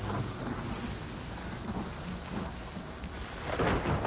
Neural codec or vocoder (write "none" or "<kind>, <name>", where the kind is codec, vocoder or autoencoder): none